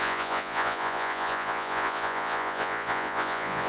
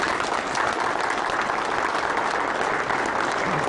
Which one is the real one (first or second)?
second